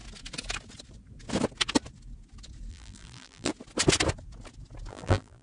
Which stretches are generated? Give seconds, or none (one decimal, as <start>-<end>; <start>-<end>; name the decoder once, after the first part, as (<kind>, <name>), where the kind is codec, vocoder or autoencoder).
2.7-3.5 (vocoder, BigVGAN v2); 4.9-5.4